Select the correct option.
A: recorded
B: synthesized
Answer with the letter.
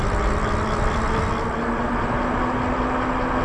A